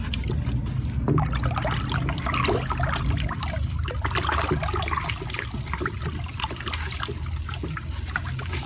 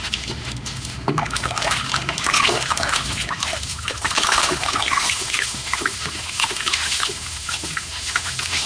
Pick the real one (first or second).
first